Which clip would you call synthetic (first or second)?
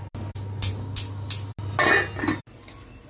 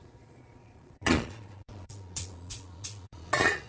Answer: second